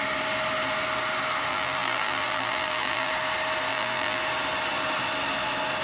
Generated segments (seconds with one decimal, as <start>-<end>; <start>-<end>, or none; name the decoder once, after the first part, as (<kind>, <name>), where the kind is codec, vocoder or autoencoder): 1.5-3.1 (vocoder, BigVGAN v2); 3.7-4.2